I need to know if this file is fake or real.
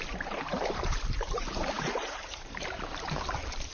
fake